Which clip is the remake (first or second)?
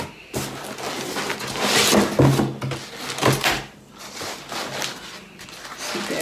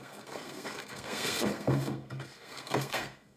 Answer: second